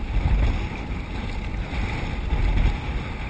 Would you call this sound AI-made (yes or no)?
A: no